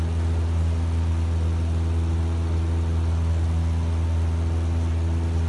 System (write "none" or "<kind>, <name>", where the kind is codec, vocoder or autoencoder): none